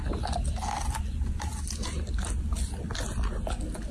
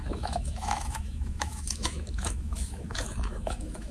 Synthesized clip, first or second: second